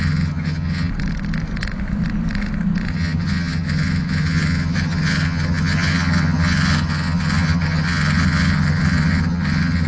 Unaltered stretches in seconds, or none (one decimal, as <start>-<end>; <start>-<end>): 0.9-2.9